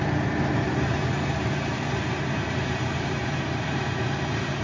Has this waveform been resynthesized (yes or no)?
yes